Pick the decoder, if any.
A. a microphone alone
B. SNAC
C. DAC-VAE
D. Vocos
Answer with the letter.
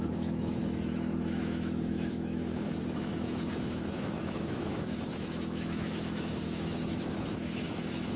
C